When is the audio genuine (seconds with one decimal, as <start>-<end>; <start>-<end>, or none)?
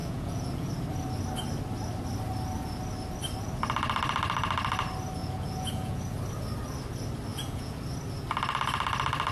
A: 0.7-5.2; 6.0-7.3; 7.8-9.3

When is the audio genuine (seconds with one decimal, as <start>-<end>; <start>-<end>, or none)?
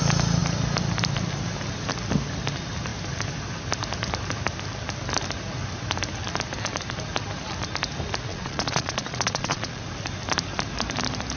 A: 0.0-8.3; 9.8-11.4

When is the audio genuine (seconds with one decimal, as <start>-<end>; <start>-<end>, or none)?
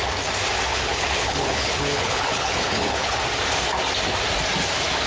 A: 0.0-0.7; 3.1-5.1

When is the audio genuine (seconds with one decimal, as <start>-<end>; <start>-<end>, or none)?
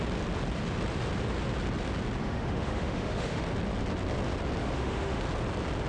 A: 0.0-2.2; 3.4-4.6; 5.2-5.9